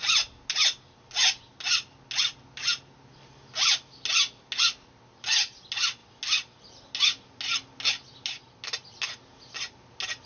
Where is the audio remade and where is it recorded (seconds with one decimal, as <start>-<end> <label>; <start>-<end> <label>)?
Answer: 0.0-10.3 recorded